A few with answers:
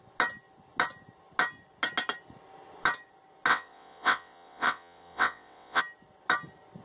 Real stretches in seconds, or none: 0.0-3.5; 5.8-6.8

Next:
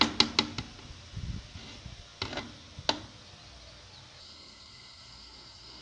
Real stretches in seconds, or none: 0.0-4.2

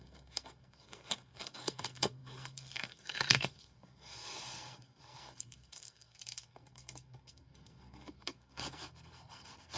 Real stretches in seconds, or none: none

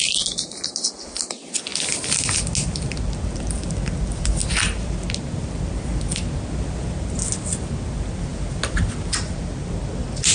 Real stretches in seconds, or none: 0.0-10.3